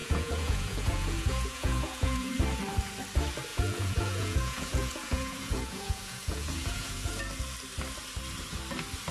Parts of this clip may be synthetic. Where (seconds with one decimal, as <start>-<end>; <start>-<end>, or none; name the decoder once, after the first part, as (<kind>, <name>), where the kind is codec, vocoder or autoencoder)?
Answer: 0.0-2.3 (vocoder, Vocos); 3.5-7.2